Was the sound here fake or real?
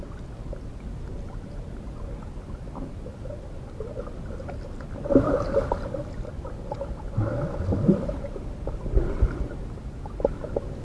real